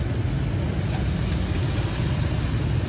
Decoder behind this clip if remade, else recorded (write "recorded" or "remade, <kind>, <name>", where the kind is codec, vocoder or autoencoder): recorded